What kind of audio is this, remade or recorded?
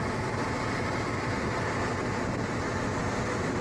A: recorded